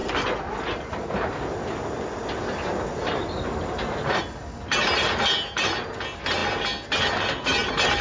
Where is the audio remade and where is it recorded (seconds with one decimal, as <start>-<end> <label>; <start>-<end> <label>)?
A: 0.0-8.0 recorded